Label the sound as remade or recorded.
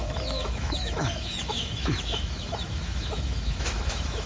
remade